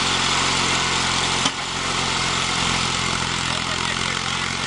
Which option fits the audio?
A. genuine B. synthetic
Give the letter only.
A